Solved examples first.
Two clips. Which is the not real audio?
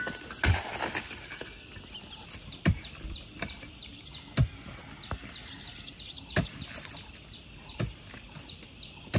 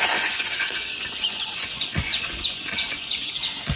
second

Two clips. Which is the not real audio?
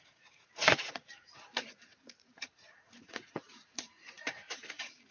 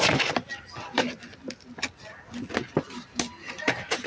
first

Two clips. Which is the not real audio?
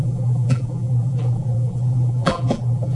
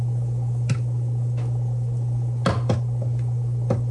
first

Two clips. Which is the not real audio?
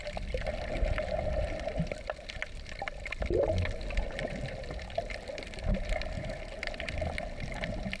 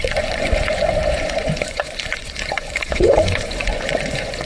second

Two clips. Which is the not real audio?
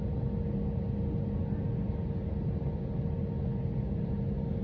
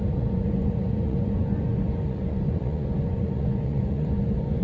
second